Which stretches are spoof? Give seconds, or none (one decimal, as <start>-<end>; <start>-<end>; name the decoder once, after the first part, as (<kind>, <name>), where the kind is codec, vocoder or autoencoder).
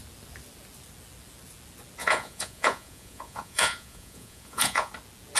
2.0-4.9 (vocoder, Vocos)